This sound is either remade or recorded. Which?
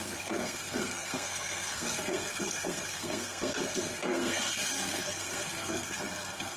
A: remade